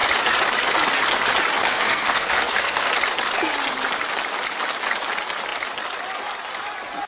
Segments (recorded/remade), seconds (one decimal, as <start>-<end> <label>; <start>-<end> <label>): 0.0-1.6 recorded; 1.6-2.9 remade; 2.9-7.1 recorded